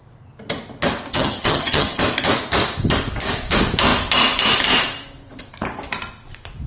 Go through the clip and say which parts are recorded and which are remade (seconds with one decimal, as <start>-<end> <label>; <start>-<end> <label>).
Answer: 0.0-1.1 recorded; 1.1-2.0 remade; 2.0-6.7 recorded